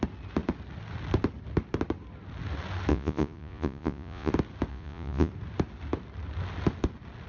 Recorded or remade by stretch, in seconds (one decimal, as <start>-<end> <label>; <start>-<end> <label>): 0.0-2.9 recorded; 2.9-4.3 remade; 4.3-4.7 recorded; 4.7-5.3 remade; 5.3-7.3 recorded

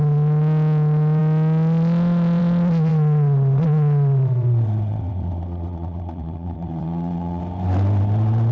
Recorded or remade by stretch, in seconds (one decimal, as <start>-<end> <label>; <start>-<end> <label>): 0.0-2.9 recorded; 2.9-7.4 remade; 7.4-8.5 recorded

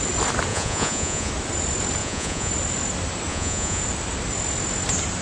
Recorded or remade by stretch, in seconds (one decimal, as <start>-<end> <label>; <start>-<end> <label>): 0.0-0.5 recorded; 0.5-1.3 remade; 1.3-2.0 recorded; 2.0-2.5 remade; 2.5-3.3 recorded; 3.3-3.8 remade; 3.8-5.2 recorded

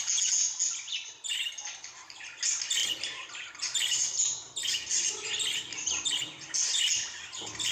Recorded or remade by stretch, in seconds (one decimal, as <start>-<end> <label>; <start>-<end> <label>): 0.0-7.7 recorded

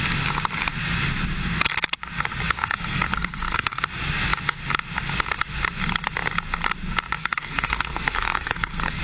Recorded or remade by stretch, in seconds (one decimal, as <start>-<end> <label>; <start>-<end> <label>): 0.0-2.6 recorded; 2.6-3.8 remade; 3.8-7.2 recorded; 7.2-9.0 remade

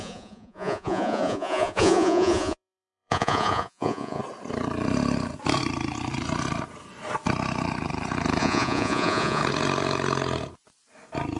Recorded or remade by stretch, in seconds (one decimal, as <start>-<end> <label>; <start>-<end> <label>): 0.0-4.2 remade; 4.2-8.4 recorded; 8.4-9.4 remade; 9.4-11.4 recorded

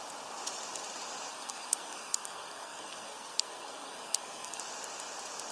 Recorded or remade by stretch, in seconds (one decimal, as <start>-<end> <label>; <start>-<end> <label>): 0.0-1.3 recorded; 1.3-4.6 remade; 4.6-5.5 recorded